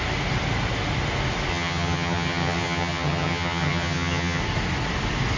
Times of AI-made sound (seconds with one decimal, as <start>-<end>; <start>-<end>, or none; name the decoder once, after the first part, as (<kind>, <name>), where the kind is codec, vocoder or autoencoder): 1.5-4.4 (vocoder, HiFi-GAN)